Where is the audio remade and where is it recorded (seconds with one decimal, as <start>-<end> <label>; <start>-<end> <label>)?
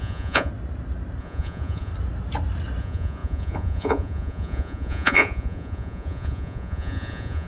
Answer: 0.0-0.5 remade; 0.5-1.2 recorded; 1.2-1.9 remade; 1.9-2.8 recorded; 2.8-7.5 remade